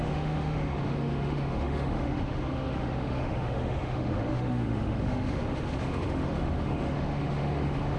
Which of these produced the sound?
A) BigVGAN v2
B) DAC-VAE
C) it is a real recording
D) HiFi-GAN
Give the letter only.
B